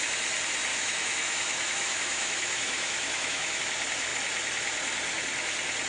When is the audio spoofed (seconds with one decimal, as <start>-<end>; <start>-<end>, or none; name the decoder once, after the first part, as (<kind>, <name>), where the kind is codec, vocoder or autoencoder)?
0.7-3.6 (autoencoder, DAC-VAE)

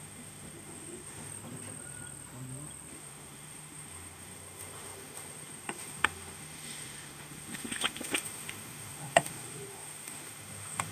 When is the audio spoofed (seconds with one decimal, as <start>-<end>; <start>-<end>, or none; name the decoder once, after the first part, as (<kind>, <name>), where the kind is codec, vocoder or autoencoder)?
0.0-1.3 (autoencoder, DAC-VAE); 2.9-10.9

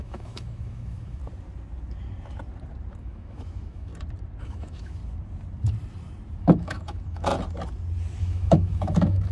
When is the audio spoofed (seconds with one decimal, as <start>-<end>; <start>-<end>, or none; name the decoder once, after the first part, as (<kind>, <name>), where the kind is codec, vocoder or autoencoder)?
0.0-1.2 (autoencoder, DAC-VAE); 3.0-3.9; 4.4-5.0; 6.4-7.3; 8.2-9.3